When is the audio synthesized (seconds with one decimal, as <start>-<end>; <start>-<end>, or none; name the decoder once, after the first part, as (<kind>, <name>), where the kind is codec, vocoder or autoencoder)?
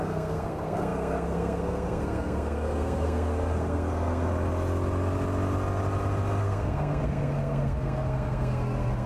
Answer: 0.0-4.3 (codec, SNAC); 6.4-9.1